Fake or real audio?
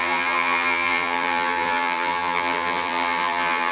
fake